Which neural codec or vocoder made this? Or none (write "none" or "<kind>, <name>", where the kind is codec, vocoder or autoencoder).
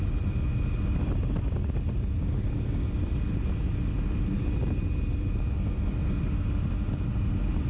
none